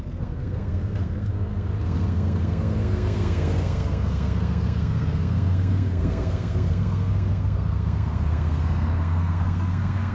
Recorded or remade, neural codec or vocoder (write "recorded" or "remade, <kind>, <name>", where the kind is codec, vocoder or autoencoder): remade, codec, SNAC